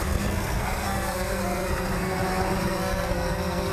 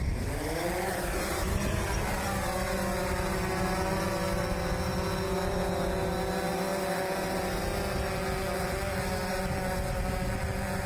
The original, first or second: second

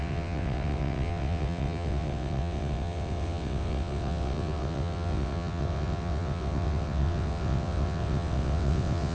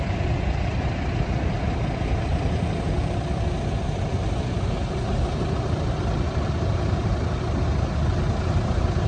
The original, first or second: second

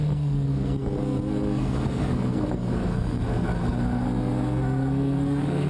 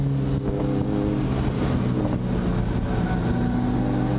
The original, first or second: second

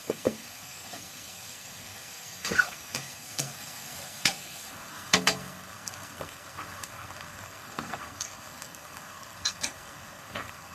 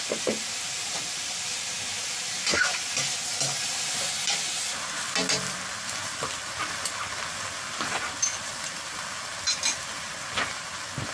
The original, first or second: second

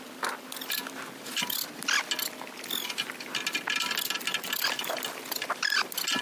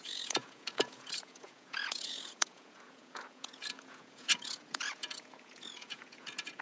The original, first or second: first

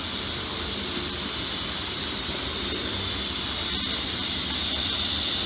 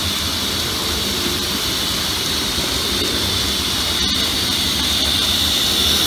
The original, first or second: first